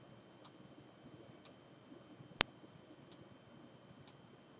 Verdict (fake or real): real